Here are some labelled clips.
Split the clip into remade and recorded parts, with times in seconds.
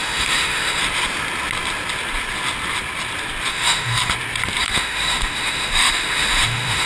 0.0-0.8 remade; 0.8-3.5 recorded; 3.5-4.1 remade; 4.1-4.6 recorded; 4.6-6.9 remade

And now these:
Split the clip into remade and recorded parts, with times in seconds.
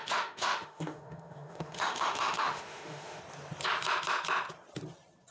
0.0-3.2 remade; 3.2-5.3 recorded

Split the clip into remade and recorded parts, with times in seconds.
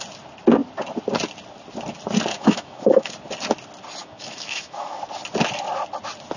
0.0-2.3 recorded; 2.3-3.1 remade; 3.1-4.0 recorded; 4.0-5.0 remade; 5.0-6.4 recorded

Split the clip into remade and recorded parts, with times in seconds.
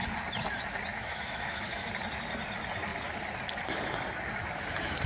0.0-0.9 recorded; 0.9-1.9 remade; 1.9-5.1 recorded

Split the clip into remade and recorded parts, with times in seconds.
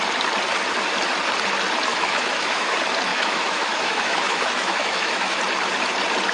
0.0-1.9 recorded; 1.9-2.7 remade; 2.7-3.1 recorded; 3.1-5.4 remade; 5.4-6.3 recorded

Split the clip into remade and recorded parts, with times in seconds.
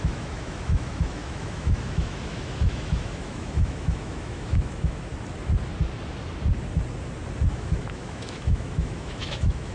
0.0-5.1 remade; 5.1-7.5 recorded; 7.5-9.7 remade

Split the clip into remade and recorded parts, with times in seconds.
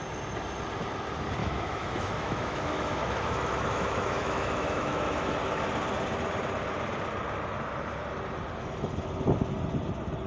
0.0-1.4 recorded; 1.4-5.3 remade; 5.3-10.3 recorded